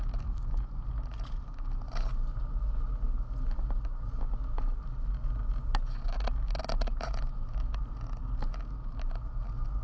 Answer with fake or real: real